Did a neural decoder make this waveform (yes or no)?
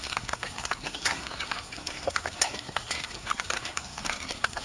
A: yes